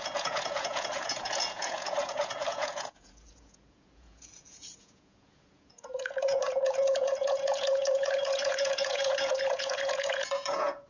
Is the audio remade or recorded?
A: remade